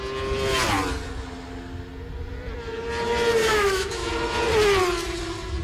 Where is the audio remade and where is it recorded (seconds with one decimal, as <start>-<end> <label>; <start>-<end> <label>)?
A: 0.0-3.4 recorded; 3.4-4.1 remade; 4.1-5.6 recorded